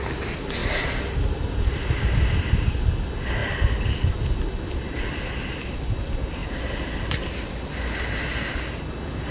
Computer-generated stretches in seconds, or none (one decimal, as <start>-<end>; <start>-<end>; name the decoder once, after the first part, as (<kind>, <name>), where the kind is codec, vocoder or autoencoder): none